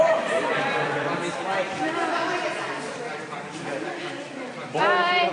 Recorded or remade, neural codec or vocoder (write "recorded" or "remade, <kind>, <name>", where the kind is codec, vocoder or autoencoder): remade, vocoder, BigVGAN v2